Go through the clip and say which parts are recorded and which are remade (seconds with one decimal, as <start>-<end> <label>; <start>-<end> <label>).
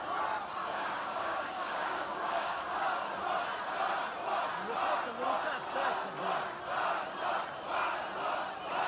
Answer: 0.0-0.6 recorded; 0.6-2.9 remade; 2.9-8.9 recorded